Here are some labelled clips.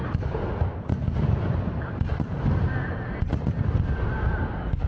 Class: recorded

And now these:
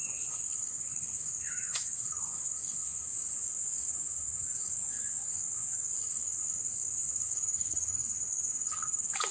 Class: remade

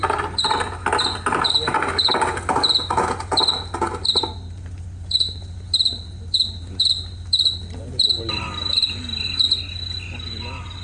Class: recorded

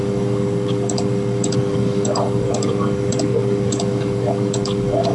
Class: remade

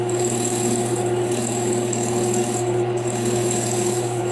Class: remade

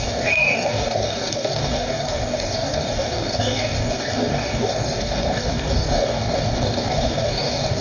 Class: remade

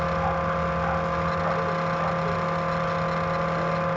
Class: recorded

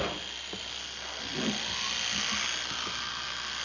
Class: recorded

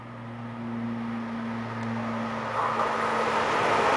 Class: recorded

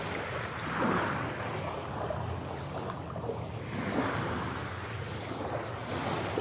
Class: recorded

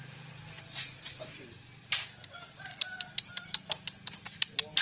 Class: recorded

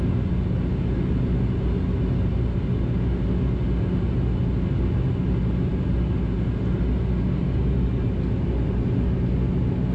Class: recorded